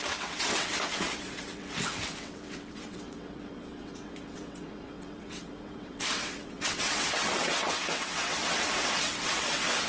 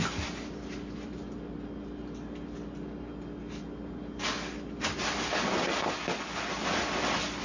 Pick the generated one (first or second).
first